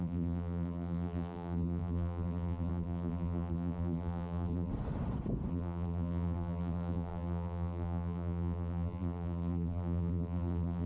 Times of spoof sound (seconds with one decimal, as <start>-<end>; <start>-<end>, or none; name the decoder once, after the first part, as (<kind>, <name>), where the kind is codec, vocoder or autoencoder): 0.0-4.7 (vocoder, BigVGAN v2); 5.5-10.9